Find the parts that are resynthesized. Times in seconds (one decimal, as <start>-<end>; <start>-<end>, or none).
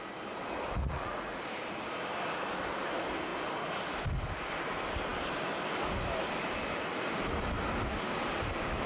0.8-1.4